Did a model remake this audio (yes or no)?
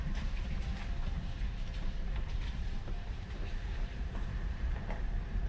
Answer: yes